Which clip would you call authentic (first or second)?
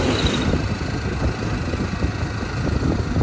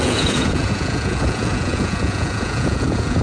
first